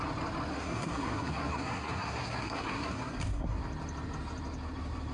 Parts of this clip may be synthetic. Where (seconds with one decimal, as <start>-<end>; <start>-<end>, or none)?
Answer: 0.5-3.6